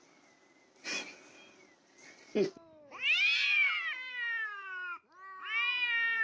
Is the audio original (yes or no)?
yes